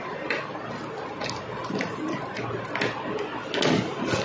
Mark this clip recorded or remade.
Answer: recorded